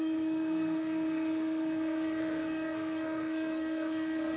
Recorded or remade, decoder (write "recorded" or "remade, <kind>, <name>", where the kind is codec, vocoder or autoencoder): remade, codec, SNAC